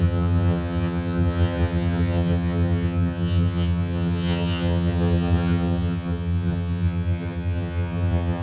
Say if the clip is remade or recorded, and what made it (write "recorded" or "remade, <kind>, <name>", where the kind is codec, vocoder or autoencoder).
remade, vocoder, HiFi-GAN